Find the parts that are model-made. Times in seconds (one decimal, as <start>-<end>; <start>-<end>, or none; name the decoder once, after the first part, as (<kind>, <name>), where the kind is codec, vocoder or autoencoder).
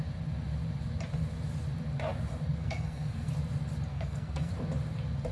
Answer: 2.6-3.3 (codec, SNAC); 3.9-4.5